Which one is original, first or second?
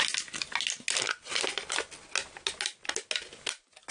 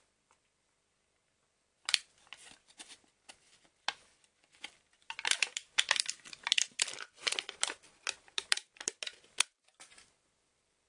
first